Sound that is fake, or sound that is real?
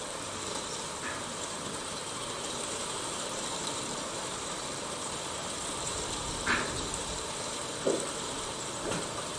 fake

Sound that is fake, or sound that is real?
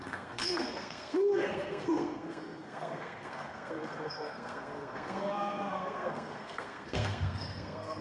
fake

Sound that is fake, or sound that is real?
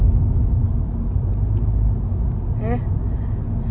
real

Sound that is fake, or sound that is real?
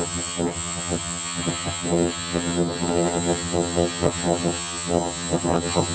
fake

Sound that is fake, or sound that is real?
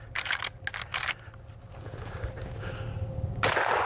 real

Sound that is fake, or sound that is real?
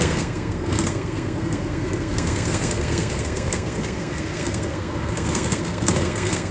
fake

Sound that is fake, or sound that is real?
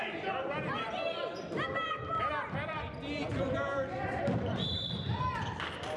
fake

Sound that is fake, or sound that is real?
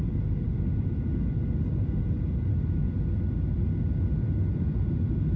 real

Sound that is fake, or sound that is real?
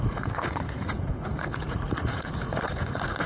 fake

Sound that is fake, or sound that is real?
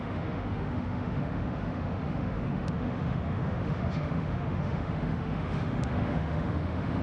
fake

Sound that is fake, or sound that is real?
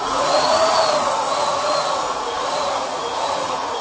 fake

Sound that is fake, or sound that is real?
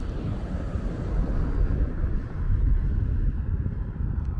real